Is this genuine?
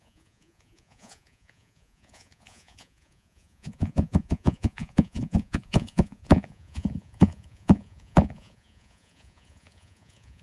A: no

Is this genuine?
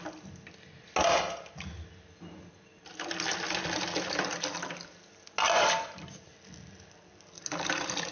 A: yes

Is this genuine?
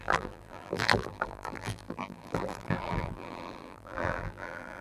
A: no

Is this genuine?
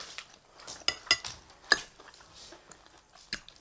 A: yes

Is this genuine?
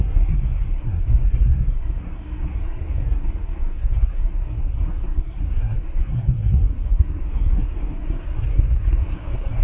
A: no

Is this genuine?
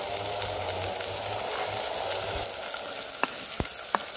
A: yes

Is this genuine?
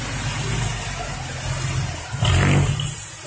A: yes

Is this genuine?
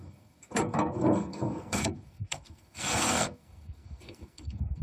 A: no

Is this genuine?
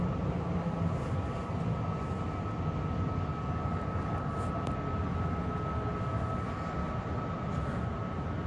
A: yes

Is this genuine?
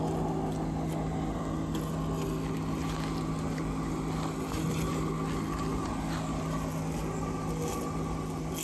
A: yes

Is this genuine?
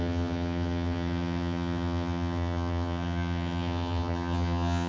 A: no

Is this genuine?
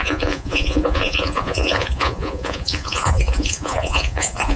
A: no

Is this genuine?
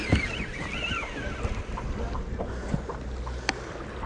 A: yes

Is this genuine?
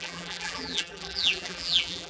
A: no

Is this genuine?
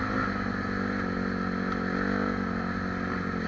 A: yes